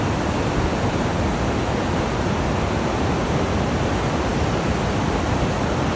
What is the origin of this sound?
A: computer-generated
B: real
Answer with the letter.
B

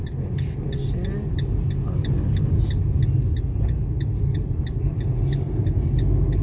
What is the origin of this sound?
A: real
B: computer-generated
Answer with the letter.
A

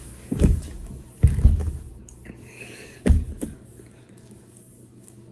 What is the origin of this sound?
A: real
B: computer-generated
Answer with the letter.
B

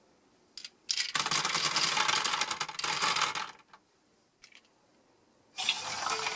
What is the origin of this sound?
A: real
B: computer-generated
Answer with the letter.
A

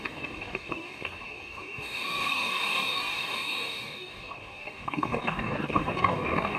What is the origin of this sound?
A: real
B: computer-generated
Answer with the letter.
B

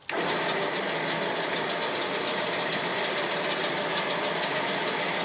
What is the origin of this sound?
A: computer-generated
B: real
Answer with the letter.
B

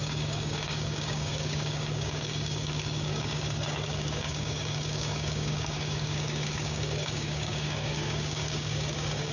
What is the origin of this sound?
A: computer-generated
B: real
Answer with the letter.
A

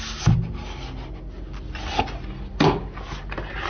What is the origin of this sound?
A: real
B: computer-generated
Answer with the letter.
A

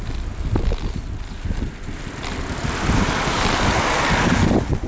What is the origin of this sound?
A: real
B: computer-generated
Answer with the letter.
A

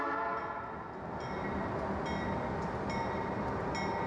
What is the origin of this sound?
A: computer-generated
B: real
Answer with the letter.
B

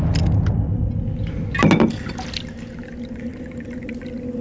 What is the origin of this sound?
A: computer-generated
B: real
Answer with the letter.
B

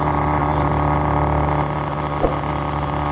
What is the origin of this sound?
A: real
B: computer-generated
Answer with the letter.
A